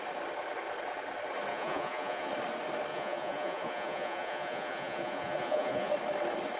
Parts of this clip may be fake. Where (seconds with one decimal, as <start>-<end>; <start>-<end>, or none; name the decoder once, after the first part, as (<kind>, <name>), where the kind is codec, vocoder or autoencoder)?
1.5-2.3 (vocoder, Vocos); 2.9-5.9